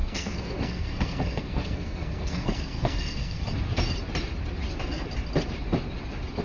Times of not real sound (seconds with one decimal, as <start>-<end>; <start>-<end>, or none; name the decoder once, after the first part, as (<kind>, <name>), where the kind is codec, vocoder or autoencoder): 0.0-3.4 (codec, SNAC)